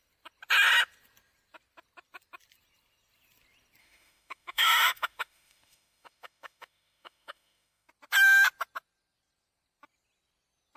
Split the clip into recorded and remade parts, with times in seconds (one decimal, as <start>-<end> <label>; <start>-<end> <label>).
0.0-3.8 recorded; 3.8-7.9 remade; 7.9-10.8 recorded